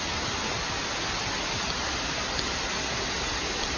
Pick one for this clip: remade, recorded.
recorded